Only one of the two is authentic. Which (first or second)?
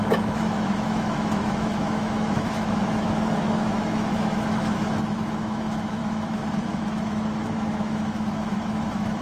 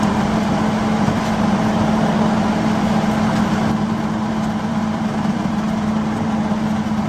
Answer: second